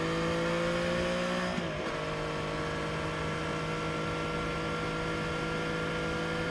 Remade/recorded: recorded